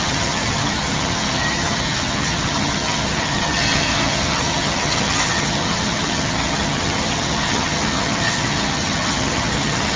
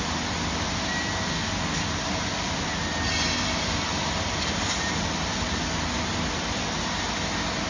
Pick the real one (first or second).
second